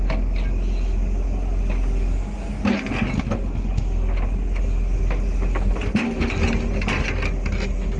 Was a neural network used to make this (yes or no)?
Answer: no